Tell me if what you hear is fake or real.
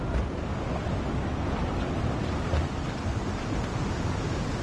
real